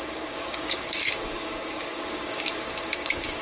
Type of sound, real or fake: fake